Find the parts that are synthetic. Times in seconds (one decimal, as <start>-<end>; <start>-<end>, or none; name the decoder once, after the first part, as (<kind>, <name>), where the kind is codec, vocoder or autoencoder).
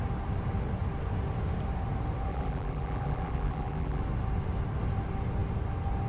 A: 2.3-4.0 (vocoder, BigVGAN v2)